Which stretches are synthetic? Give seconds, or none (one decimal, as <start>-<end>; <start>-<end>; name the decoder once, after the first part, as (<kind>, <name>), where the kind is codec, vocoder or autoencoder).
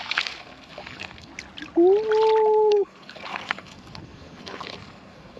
0.0-1.3 (codec, SNAC); 2.7-5.4